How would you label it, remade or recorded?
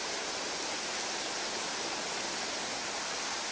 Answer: recorded